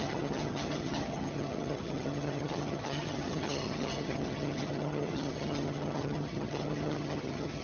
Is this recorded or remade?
remade